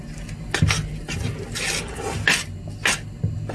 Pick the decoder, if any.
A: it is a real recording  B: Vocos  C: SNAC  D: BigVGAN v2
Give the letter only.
A